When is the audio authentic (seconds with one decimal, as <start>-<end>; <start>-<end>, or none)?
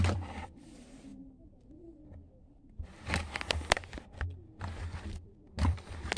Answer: 1.1-4.8